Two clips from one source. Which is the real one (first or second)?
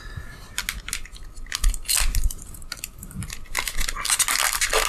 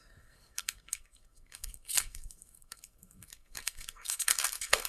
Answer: first